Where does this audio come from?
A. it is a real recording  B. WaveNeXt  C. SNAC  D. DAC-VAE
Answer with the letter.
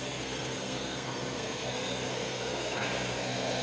C